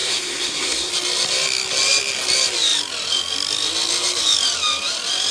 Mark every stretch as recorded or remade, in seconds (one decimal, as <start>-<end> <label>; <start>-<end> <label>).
0.0-0.9 remade; 0.9-5.3 recorded